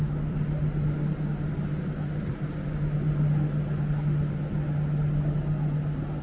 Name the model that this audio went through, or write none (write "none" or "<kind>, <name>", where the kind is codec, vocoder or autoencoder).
none